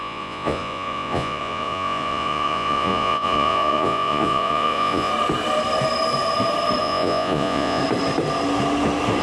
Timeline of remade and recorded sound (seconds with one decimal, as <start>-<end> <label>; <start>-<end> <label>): 0.0-5.1 remade; 5.1-6.8 recorded; 6.8-7.8 remade; 7.8-9.2 recorded